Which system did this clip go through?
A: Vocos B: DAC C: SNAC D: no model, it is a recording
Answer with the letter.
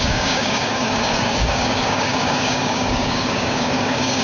B